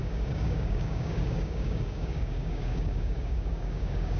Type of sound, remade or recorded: remade